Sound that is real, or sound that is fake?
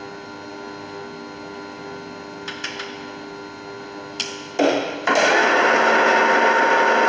real